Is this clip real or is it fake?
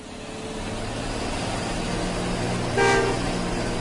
real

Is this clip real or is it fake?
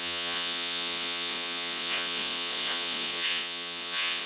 fake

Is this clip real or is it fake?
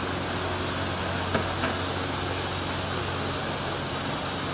real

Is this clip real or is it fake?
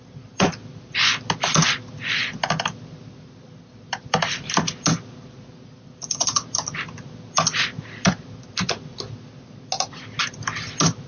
real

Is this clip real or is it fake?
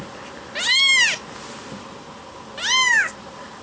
real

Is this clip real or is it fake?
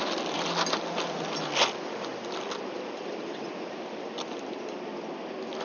real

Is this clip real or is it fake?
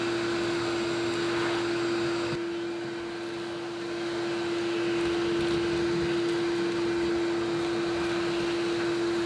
real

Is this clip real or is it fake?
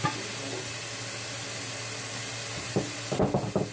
real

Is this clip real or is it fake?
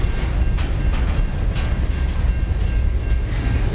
real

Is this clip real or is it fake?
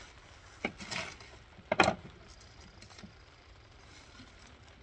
real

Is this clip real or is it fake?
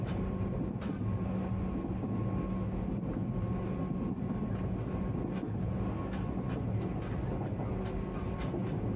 real